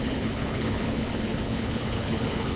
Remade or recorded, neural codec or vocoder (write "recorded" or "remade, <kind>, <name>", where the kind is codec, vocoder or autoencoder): remade, codec, HILCodec